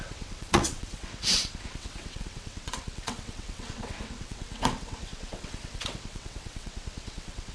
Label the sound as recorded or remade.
remade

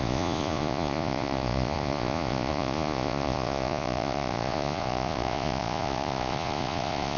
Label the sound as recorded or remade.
remade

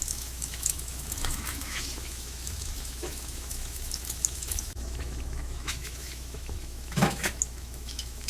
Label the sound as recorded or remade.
remade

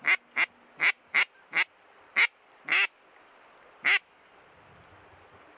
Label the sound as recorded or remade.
recorded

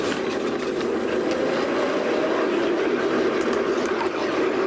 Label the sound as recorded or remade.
recorded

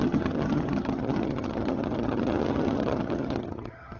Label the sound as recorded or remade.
remade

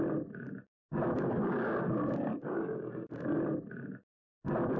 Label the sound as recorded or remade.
recorded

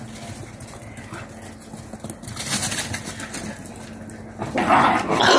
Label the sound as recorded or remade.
recorded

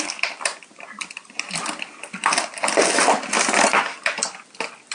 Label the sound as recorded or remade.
recorded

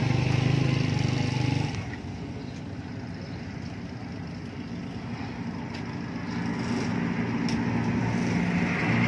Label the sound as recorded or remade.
recorded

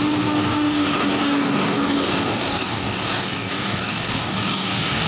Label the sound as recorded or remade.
remade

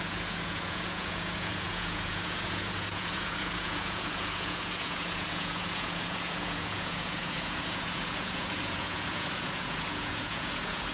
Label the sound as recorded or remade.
remade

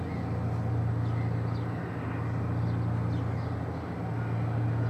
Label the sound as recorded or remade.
recorded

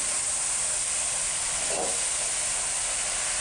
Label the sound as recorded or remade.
recorded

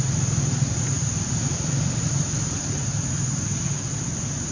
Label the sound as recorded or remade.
recorded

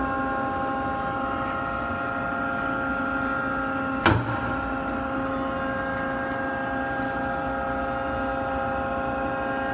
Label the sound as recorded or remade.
recorded